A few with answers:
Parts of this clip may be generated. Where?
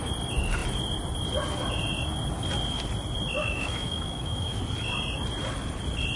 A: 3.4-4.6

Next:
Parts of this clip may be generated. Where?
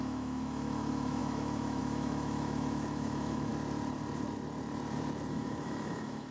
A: 0.0-3.5; 5.3-6.3